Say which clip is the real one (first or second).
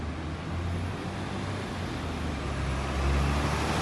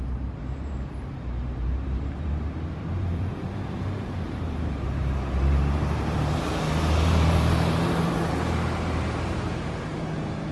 first